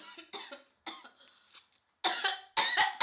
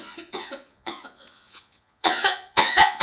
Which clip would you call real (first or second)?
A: first